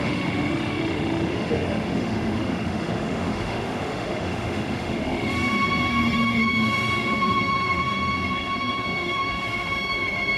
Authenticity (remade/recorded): remade